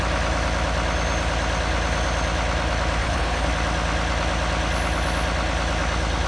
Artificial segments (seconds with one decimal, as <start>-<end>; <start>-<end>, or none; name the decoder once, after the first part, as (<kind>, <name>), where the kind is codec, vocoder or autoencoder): 3.0-3.5 (codec, HILCodec)